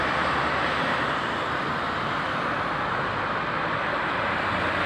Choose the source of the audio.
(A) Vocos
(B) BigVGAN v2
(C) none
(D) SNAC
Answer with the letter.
B